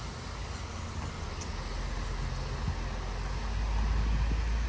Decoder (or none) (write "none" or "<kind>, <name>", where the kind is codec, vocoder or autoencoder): none